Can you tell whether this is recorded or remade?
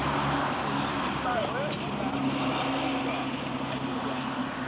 recorded